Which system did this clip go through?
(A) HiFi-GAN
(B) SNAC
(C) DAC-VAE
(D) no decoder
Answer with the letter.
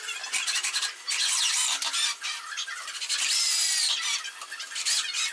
D